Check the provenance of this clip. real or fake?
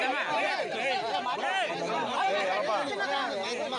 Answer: real